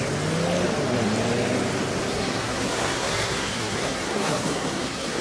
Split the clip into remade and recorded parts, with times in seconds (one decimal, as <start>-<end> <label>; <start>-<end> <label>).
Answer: 0.0-2.1 recorded; 2.1-5.2 remade